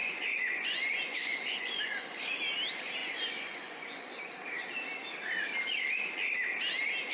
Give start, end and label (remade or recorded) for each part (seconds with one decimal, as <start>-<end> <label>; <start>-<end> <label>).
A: 0.0-2.3 remade; 2.3-3.0 recorded; 3.0-4.2 remade; 4.2-7.1 recorded